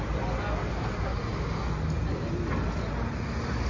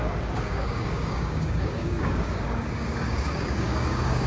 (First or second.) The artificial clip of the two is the second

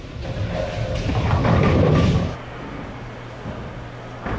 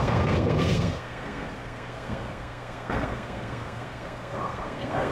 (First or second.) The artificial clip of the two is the second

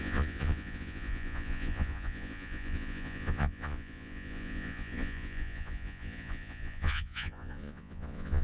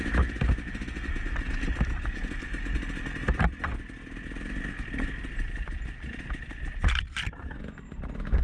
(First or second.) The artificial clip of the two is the first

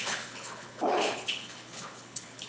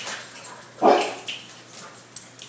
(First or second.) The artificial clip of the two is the first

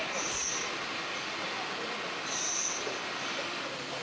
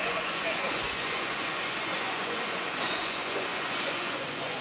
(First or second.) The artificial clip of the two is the second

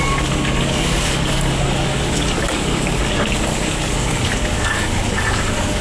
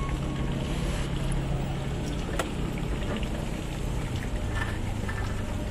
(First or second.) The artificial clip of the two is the first